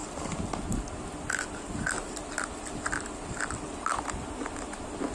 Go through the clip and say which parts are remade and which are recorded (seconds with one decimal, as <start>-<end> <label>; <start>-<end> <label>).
0.0-5.1 recorded